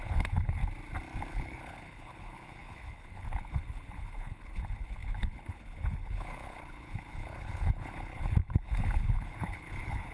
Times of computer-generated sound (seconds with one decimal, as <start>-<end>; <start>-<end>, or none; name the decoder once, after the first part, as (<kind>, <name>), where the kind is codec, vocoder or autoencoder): 0.0-0.6 (codec, HILCodec); 1.3-10.1